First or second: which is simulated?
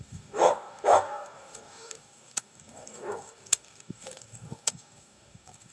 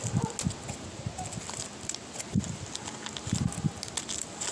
first